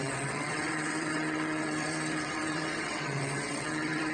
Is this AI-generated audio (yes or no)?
yes